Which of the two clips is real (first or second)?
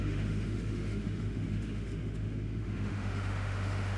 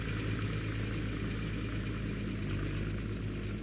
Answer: second